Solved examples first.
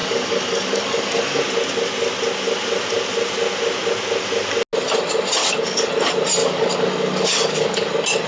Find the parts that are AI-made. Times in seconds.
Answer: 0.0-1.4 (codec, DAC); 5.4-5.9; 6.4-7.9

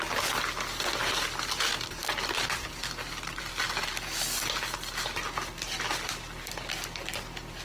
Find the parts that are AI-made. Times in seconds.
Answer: none

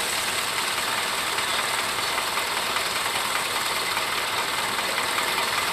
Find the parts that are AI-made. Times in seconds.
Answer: none